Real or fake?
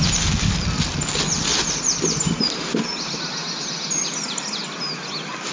real